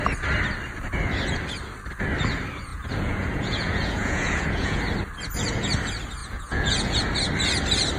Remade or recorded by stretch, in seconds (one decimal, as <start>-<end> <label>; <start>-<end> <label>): 0.0-2.7 recorded; 2.7-4.8 remade; 4.8-6.2 recorded; 6.2-7.0 remade; 7.0-8.0 recorded